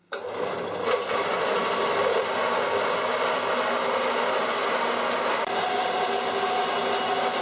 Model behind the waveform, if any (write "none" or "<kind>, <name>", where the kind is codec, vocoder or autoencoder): none